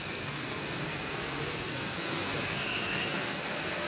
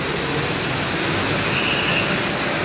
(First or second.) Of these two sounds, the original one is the second